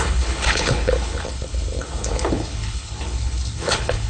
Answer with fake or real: fake